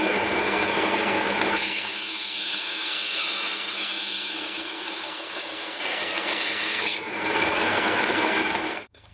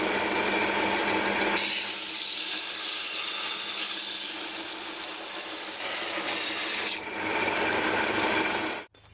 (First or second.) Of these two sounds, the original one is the second